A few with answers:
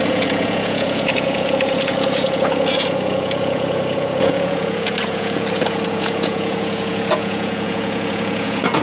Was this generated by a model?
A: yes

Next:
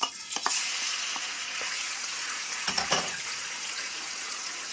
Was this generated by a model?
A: yes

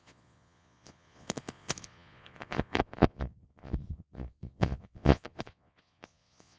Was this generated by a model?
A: yes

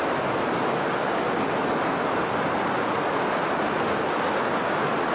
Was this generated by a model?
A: no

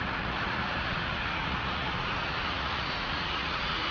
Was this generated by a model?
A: yes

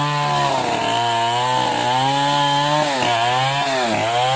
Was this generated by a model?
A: no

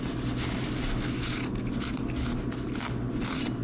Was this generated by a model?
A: no